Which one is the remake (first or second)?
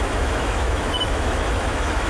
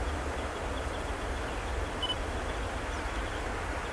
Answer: first